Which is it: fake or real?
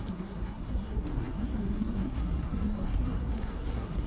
fake